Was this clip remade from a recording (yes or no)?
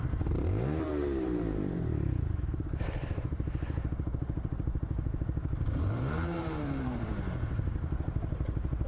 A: yes